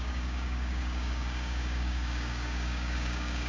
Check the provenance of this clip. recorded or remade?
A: remade